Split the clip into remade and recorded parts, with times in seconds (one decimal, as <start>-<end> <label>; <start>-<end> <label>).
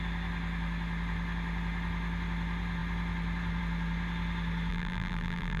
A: 0.0-4.7 recorded; 4.7-5.6 remade